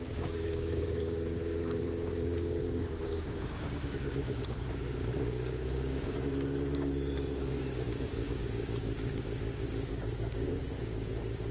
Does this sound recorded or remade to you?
remade